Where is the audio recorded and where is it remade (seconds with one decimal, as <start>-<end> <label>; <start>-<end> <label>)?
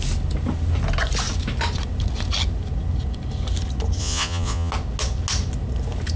0.0-4.0 recorded; 4.0-4.7 remade; 4.7-6.2 recorded